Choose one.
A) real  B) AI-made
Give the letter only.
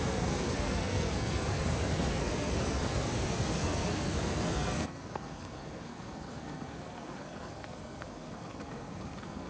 B